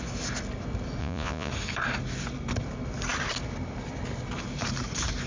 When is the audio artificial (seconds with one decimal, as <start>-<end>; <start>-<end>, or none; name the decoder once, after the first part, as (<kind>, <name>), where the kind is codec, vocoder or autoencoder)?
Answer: 1.0-1.5 (vocoder, Vocos)